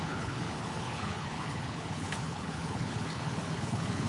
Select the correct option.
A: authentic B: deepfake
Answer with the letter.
B